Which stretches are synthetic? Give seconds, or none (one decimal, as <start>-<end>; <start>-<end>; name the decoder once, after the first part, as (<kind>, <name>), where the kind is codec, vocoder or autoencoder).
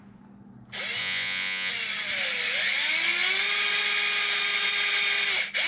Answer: 1.0-1.7 (vocoder, Vocos)